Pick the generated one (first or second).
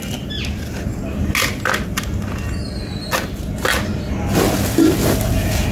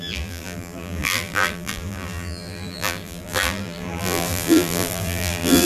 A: second